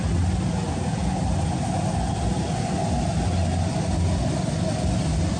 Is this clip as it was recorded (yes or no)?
yes